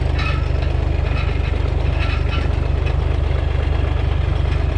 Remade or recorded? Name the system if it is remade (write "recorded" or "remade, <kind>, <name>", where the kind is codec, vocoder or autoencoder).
recorded